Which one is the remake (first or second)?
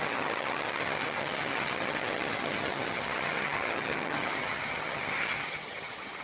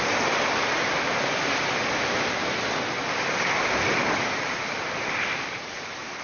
first